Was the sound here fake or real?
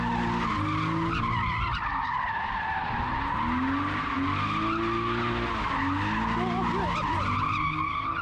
real